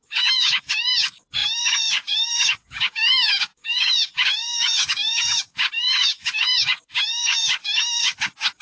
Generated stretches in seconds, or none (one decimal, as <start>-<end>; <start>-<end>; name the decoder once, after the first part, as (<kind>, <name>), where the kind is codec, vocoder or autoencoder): 0.0-8.6 (codec, DAC)